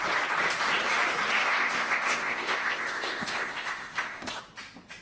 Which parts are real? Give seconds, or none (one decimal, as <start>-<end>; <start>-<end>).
0.0-1.4; 4.4-5.0